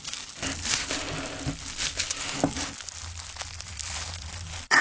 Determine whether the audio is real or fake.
real